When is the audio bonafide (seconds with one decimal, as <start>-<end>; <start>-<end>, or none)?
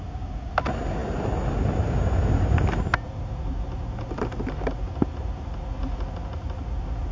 0.0-7.1